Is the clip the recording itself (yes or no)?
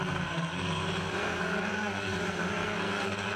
no